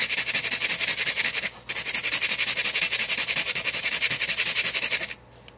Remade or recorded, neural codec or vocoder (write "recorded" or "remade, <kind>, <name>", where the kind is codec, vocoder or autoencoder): recorded